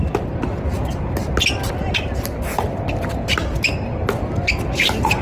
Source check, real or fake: real